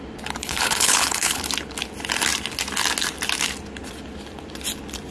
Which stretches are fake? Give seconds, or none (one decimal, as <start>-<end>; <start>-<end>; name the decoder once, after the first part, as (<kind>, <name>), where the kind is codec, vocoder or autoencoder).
0.4-1.4 (codec, HILCodec)